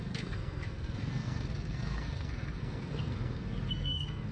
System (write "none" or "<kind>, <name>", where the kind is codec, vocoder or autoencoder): codec, SNAC